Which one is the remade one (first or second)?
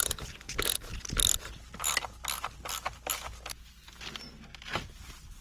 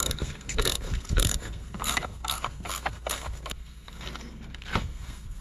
second